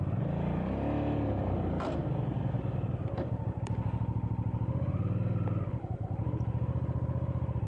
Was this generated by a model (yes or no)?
no